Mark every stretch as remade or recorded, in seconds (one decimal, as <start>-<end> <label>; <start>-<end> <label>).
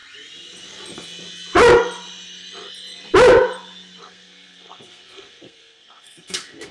0.0-4.0 recorded; 4.0-6.7 remade